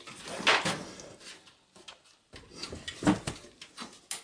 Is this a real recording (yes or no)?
yes